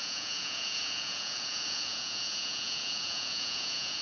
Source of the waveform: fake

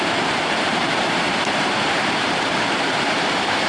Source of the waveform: fake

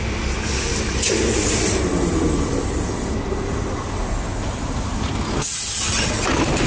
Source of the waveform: real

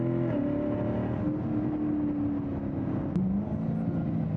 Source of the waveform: real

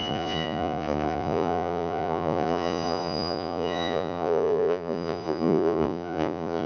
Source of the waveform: fake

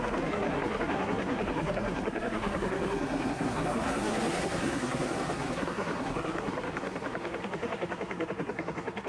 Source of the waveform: fake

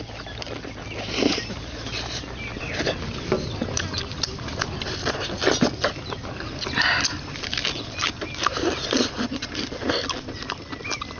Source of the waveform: real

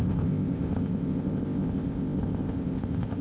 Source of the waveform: fake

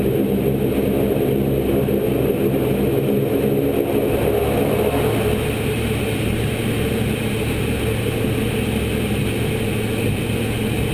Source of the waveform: real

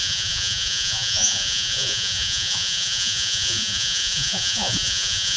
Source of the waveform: fake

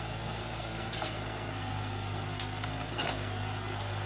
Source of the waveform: fake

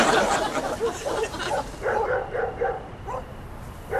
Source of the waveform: real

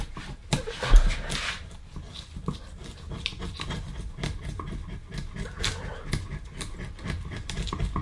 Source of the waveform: real